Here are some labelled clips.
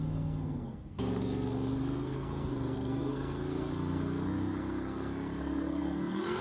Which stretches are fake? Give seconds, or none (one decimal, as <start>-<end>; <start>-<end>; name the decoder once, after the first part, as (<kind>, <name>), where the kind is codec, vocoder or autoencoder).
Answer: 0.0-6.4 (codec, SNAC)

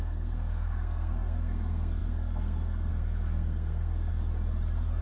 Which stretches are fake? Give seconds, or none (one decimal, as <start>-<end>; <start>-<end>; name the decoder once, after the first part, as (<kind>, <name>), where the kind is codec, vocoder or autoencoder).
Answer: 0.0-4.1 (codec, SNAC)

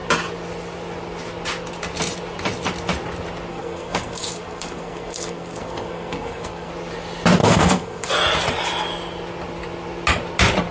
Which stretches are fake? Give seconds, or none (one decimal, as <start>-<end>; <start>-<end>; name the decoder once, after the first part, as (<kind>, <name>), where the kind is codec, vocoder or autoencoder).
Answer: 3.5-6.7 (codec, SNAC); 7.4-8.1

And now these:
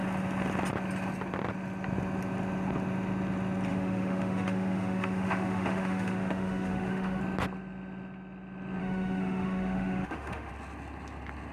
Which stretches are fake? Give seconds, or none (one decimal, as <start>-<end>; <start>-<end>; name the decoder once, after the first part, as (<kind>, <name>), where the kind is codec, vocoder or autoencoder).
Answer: 3.7-7.2 (autoencoder, DAC-VAE); 8.8-10.5

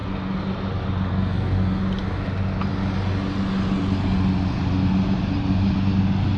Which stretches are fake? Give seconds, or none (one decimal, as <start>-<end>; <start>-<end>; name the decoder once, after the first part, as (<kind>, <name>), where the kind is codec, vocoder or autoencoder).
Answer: 1.1-1.8 (codec, SNAC)